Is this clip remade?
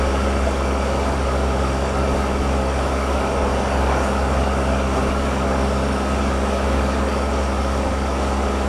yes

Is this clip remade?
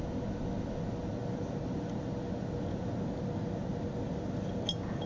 no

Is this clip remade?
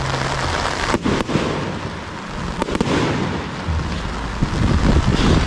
no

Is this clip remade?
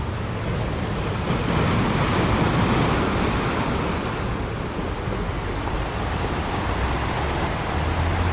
no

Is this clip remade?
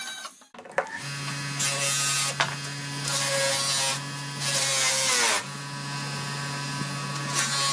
no